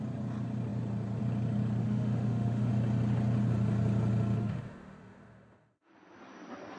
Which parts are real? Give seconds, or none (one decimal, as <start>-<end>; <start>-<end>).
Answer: 0.0-1.8; 2.7-4.4; 5.9-6.8